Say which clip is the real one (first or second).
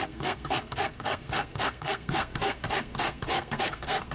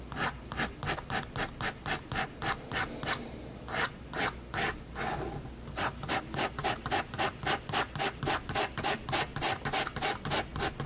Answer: second